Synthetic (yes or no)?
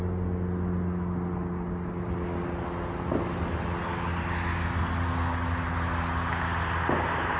no